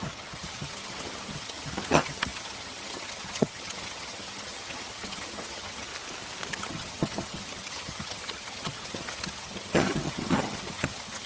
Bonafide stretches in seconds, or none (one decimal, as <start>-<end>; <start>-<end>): 5.9-6.5